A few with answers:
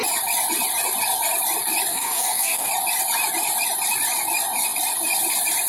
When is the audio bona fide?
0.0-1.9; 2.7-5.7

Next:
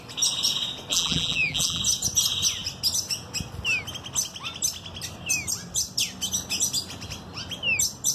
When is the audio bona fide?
0.0-0.9; 1.8-8.1

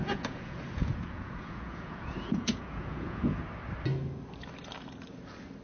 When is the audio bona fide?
3.4-5.6

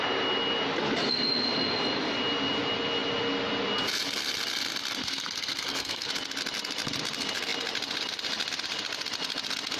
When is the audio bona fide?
0.0-5.0; 6.1-9.8

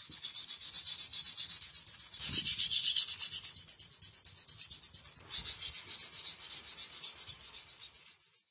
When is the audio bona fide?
0.0-8.5

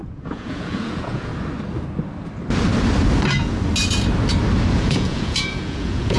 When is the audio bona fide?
1.3-4.7

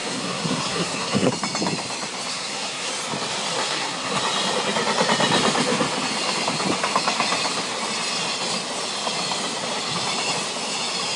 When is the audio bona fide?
1.3-2.3; 2.9-3.6; 4.2-11.2